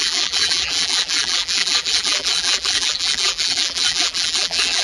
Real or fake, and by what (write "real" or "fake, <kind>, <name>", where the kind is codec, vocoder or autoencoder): fake, vocoder, BigVGAN v2